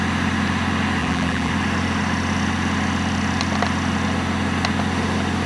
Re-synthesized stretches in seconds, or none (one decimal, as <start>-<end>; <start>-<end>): 1.0-1.5